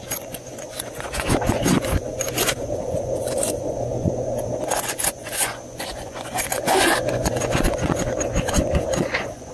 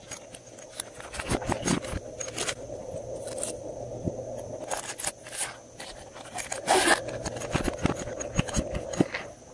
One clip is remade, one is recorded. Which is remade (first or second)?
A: first